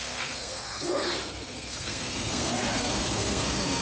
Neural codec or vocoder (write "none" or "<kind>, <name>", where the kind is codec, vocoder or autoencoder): codec, SNAC